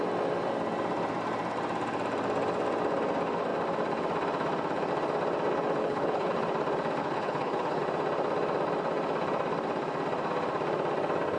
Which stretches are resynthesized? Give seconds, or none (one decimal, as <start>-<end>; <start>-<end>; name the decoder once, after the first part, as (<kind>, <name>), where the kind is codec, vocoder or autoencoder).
5.8-6.3 (codec, HILCodec); 7.0-7.8